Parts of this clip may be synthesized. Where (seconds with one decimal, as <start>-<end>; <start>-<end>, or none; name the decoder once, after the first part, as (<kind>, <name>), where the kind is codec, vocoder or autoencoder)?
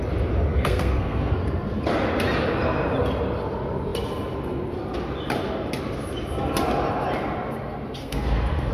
0.5-1.4 (codec, SNAC); 8.0-8.7